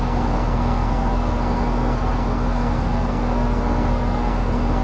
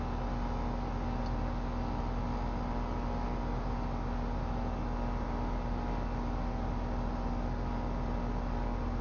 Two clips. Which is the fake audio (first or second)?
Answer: first